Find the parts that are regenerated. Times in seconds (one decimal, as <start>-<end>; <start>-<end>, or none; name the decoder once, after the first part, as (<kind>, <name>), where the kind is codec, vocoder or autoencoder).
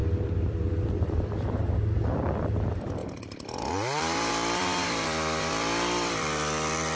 0.0-7.0 (vocoder, BigVGAN v2)